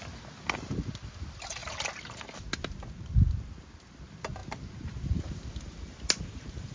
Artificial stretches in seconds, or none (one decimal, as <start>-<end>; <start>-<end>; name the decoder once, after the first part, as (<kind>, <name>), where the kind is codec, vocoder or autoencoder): none